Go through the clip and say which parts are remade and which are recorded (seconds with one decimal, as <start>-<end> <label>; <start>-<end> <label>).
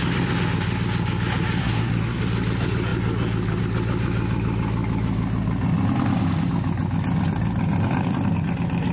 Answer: 0.0-1.6 recorded; 1.6-2.2 remade; 2.2-8.9 recorded